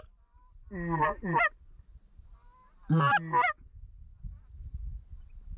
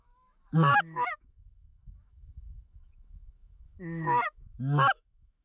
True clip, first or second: first